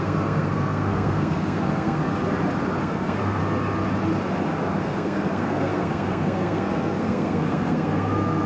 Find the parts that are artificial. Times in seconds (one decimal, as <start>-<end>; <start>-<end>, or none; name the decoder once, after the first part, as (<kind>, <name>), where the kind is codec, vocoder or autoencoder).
0.0-2.1 (codec, SNAC); 2.8-3.4; 4.8-8.5